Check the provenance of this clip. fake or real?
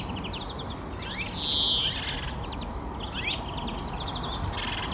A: real